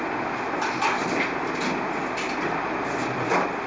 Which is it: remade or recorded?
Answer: recorded